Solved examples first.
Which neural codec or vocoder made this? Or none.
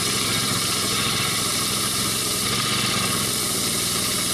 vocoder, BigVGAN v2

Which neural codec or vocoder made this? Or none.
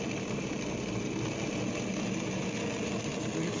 none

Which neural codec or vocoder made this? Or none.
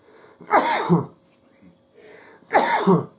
none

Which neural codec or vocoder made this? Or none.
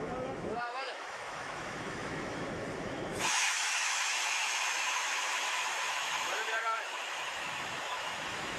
autoencoder, DAC-VAE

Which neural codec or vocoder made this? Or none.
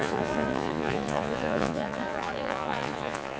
vocoder, Vocos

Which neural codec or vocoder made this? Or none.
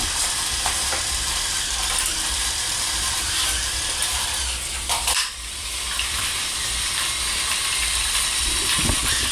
vocoder, BigVGAN v2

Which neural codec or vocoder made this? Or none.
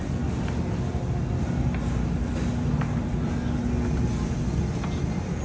none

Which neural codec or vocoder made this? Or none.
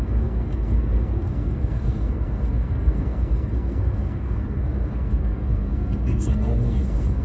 codec, SNAC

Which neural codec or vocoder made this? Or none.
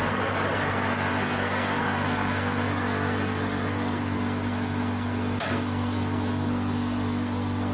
codec, SNAC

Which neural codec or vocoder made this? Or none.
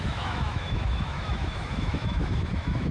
autoencoder, DAC-VAE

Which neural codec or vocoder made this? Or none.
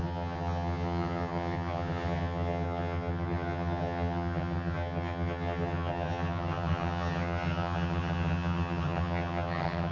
vocoder, HiFi-GAN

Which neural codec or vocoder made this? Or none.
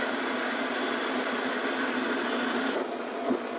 none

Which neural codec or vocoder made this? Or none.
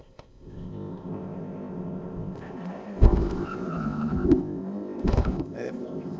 codec, ZipCodec